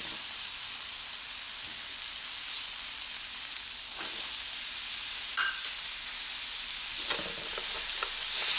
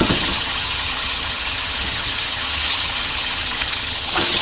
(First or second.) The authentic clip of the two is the first